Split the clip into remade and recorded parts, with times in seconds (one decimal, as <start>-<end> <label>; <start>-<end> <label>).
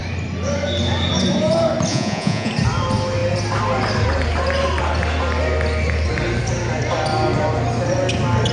0.0-1.9 recorded; 1.9-2.5 remade; 2.5-8.5 recorded